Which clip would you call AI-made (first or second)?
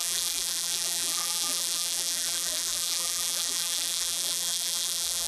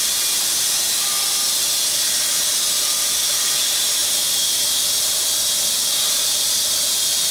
first